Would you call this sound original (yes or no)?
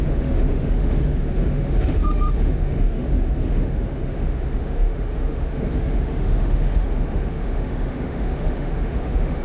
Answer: no